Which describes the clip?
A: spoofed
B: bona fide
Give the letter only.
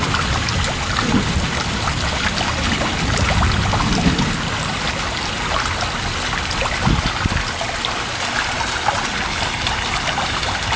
B